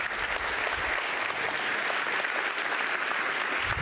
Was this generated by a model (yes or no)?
no